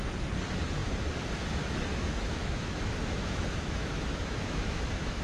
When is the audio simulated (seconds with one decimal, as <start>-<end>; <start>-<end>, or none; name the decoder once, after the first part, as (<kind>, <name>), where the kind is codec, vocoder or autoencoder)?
1.9-5.2 (autoencoder, DAC-VAE)